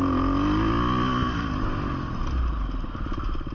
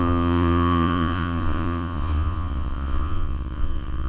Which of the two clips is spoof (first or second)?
second